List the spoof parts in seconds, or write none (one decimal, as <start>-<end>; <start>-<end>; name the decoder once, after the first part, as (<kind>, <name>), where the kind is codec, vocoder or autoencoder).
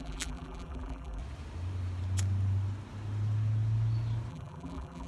0.0-1.2 (vocoder, BigVGAN v2); 4.3-5.1